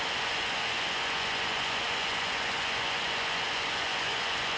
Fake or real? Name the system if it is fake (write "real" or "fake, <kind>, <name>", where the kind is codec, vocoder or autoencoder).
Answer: fake, vocoder, Vocos